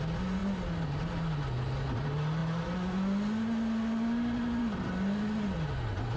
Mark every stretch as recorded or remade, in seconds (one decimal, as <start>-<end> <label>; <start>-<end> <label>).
0.0-6.2 recorded